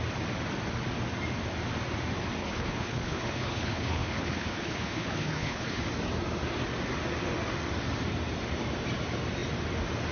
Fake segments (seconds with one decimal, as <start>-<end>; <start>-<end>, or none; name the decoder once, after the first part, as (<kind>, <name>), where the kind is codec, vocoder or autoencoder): 2.4-5.8 (codec, HILCodec)